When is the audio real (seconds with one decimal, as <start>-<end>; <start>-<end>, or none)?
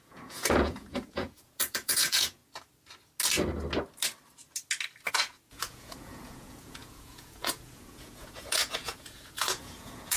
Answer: 2.4-5.1